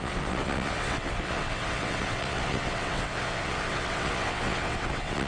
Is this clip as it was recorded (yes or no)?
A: no